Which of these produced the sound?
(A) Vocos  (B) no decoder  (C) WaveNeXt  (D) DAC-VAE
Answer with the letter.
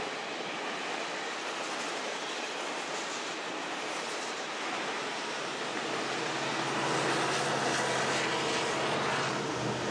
B